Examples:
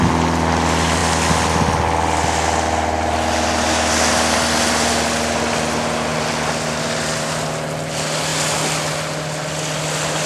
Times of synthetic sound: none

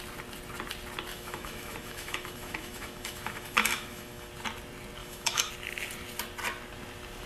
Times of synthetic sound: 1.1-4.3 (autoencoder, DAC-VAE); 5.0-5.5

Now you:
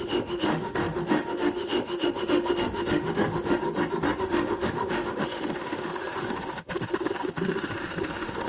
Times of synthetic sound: 0.0-3.6 (autoencoder, DAC-VAE); 4.2-8.5

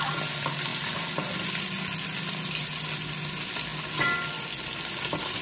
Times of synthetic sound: none

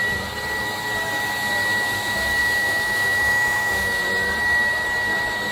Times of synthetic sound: 2.4-4.0 (autoencoder, DAC-VAE)

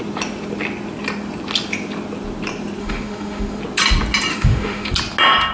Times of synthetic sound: 2.8-3.6 (autoencoder, DAC-VAE); 4.3-4.9